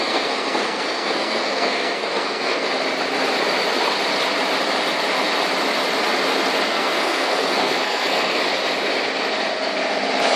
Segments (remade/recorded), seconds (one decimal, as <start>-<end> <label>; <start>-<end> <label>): 0.0-2.7 remade; 2.7-6.7 recorded; 6.7-8.4 remade; 8.4-10.4 recorded